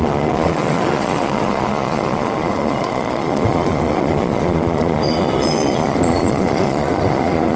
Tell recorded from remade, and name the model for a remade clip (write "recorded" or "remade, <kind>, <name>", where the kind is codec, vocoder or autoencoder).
remade, vocoder, Vocos